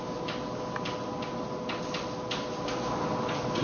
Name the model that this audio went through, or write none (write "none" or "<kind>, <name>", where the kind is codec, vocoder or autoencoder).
none